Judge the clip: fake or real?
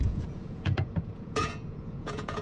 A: fake